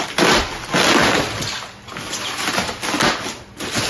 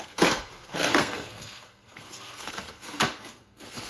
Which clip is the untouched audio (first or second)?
first